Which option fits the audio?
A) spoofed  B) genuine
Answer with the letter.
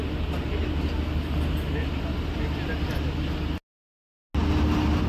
B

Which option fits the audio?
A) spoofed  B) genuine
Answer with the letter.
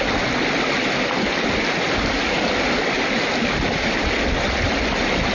B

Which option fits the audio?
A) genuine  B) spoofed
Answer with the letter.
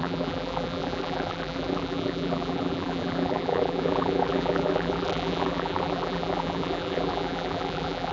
B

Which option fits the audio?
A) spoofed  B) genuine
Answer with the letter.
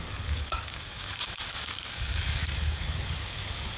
A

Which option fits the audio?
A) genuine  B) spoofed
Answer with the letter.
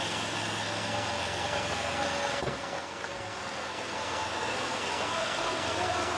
B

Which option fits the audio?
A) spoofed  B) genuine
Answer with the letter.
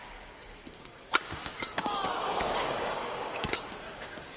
A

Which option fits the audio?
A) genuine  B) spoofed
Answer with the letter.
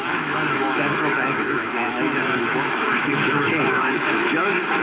B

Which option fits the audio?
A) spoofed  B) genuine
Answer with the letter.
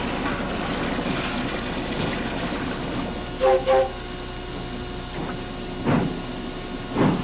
B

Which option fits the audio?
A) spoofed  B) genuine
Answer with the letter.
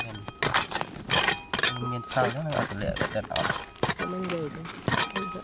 B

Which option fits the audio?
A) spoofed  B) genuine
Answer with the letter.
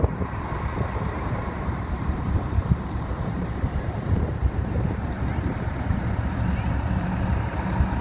A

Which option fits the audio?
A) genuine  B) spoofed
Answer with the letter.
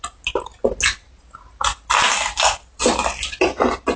A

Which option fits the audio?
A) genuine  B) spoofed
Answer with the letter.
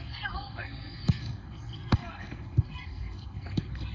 B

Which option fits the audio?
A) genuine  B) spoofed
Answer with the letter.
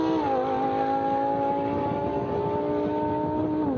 A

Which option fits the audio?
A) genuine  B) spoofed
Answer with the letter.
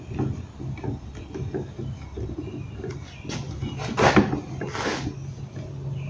A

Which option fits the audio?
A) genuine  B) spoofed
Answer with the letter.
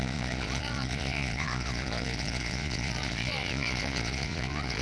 B